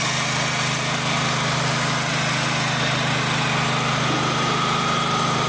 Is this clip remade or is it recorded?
recorded